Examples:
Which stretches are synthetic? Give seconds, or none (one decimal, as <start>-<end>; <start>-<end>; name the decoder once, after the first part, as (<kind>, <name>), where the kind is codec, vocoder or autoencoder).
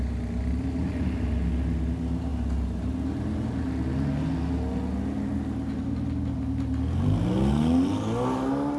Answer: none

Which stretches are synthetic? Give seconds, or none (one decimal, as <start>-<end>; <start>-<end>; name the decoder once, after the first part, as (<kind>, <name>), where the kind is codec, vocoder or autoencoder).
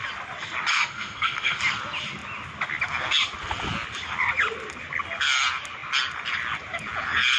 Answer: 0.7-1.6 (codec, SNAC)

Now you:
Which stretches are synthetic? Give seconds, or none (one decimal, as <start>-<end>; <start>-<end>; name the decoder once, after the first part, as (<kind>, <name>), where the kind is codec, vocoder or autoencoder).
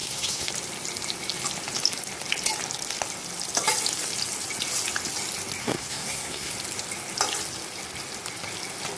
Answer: 0.0-0.5 (codec, SNAC); 5.6-6.5